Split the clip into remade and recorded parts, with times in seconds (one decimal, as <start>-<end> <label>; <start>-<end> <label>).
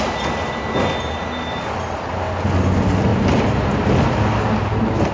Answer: 0.0-5.1 recorded